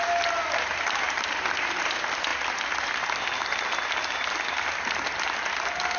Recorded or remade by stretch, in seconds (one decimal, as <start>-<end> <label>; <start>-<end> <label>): 0.0-6.0 recorded